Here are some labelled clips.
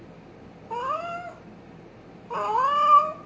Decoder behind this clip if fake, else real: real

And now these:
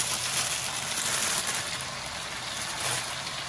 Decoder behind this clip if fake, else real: real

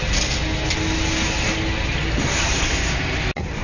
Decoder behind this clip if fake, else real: real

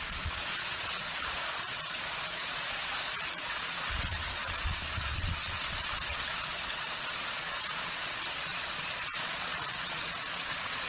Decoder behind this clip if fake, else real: fake, vocoder, Vocos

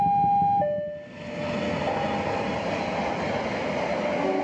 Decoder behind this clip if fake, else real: real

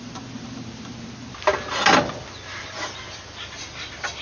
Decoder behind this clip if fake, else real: real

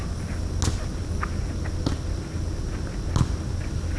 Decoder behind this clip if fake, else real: real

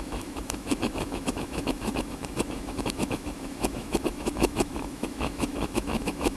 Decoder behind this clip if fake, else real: fake, autoencoder, DAC-VAE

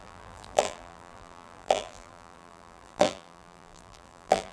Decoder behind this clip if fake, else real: fake, vocoder, BigVGAN v2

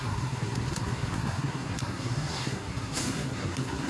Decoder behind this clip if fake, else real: fake, codec, SNAC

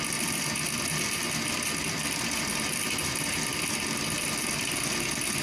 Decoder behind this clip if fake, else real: real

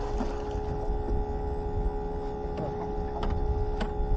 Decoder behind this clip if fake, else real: real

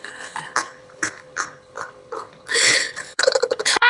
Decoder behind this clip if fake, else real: fake, codec, HILCodec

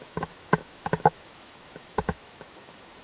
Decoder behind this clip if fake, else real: fake, autoencoder, DAC-VAE